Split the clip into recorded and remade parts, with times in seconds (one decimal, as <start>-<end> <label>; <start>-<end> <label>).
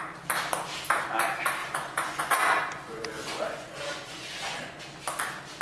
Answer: 0.0-1.6 recorded; 1.6-4.8 remade; 4.8-5.6 recorded